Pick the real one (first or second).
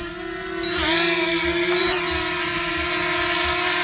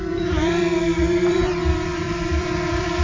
first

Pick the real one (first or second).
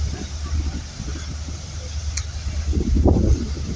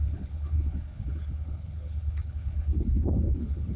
first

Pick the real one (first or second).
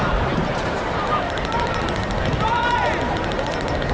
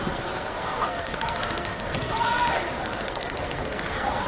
first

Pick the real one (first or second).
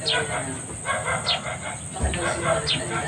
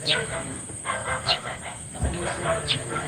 first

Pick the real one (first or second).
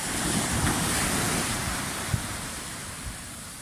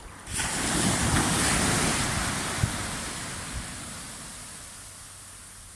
second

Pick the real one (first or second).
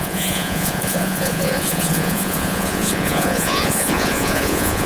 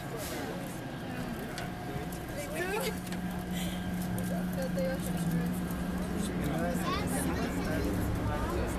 second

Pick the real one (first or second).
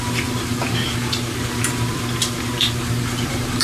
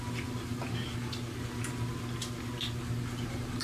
second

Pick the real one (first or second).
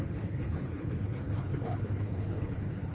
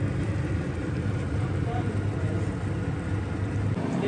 second